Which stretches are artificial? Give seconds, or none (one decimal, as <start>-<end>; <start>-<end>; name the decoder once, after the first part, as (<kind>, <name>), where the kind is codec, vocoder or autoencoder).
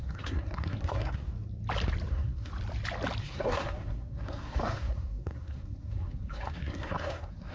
0.0-1.3 (codec, SNAC); 2.1-2.5; 3.2-7.5